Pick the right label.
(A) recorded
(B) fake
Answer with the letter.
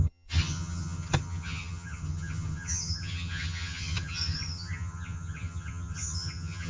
B